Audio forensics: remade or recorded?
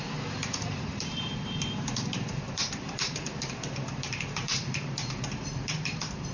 remade